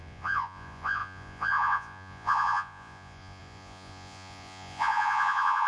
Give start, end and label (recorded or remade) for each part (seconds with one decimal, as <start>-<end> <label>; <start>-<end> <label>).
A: 0.0-5.7 remade